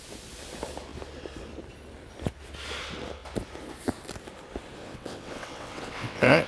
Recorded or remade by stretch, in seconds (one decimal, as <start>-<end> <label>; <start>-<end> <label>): 0.0-4.8 recorded; 4.8-6.5 remade